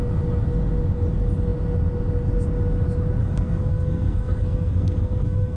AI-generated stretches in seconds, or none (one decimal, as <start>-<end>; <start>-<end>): 3.2-5.6